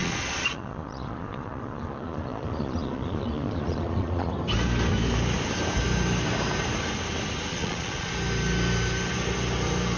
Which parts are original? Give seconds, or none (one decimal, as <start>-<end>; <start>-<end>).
4.3-7.5; 8.1-10.0